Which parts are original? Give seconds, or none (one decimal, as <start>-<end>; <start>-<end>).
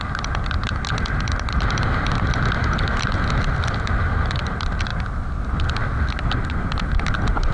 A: 0.0-7.5